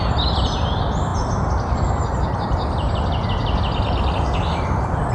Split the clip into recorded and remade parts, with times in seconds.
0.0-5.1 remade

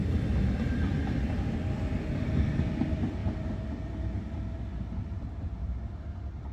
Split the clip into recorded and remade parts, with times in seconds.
0.0-1.2 recorded; 1.2-3.2 remade; 3.2-5.0 recorded; 5.0-6.5 remade